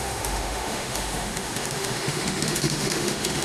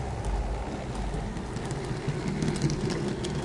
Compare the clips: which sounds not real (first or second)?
first